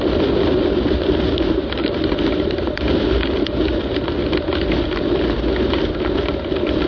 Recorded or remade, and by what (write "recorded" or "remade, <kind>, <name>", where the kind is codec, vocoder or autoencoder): recorded